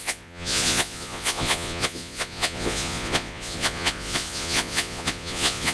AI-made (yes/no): yes